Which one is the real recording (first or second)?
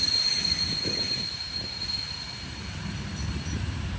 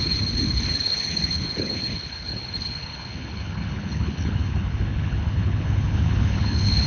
first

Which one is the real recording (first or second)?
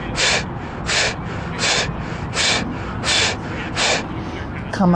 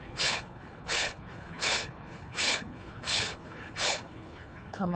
first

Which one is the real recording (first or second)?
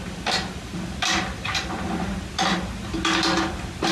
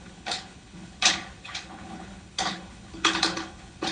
first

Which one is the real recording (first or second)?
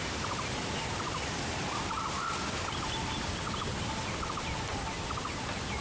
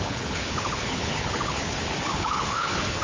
first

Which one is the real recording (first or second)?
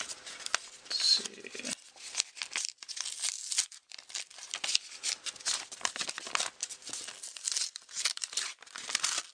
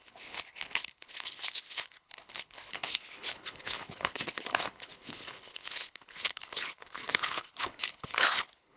first